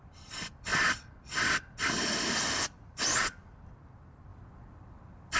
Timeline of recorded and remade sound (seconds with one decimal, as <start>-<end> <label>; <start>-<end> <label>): 0.0-0.7 remade; 0.7-2.2 recorded; 2.2-5.4 remade